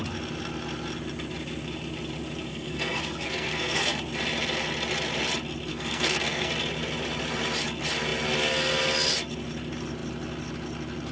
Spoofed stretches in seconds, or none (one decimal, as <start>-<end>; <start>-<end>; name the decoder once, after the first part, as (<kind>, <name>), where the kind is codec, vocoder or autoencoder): 2.5-4.0 (codec, SNAC); 5.7-6.5